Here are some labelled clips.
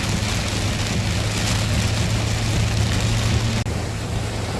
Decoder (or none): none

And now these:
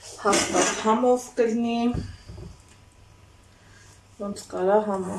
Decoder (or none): none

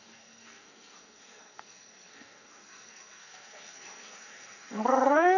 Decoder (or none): codec, SNAC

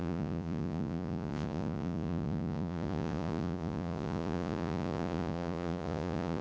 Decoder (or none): vocoder, Vocos